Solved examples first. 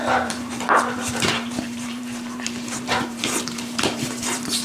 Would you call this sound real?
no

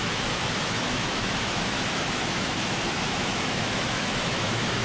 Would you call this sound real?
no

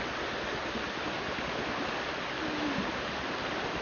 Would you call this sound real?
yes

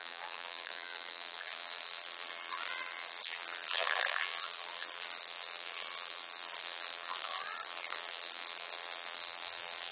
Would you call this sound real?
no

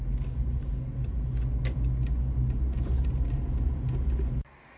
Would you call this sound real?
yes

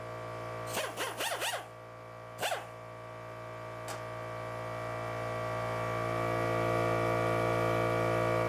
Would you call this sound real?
yes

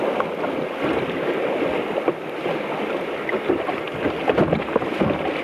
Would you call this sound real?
yes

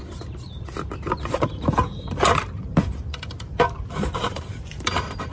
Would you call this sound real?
no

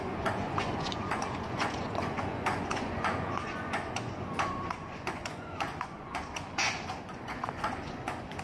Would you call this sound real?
no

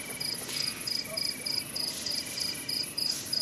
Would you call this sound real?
yes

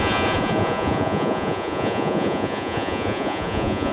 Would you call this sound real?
no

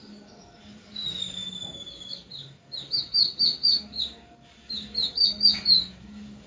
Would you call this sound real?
no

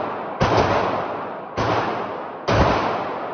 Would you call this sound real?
yes